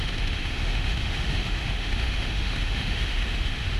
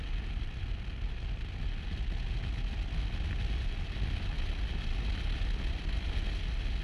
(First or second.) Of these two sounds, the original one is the second